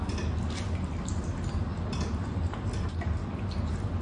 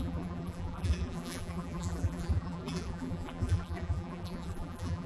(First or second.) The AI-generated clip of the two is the second